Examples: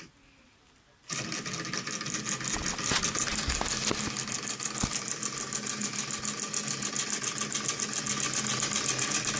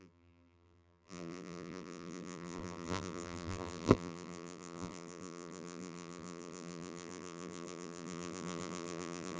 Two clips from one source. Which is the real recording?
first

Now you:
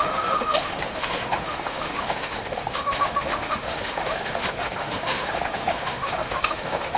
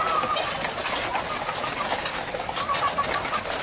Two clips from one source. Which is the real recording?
second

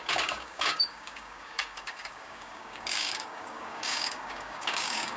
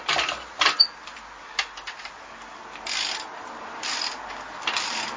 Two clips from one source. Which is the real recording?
second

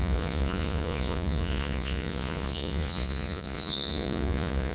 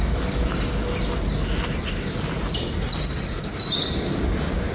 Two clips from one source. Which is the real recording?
second